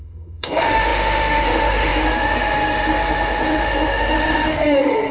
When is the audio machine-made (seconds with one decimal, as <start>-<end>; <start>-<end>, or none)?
0.0-5.1